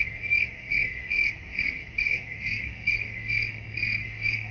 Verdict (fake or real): fake